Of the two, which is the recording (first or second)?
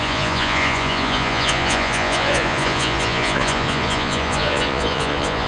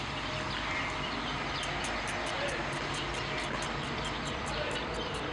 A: second